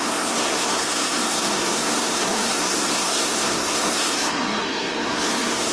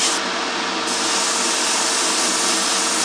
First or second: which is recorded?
second